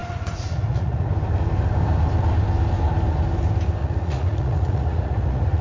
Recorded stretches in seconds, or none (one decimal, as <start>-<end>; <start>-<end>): 1.1-3.8